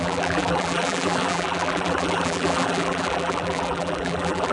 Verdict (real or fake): fake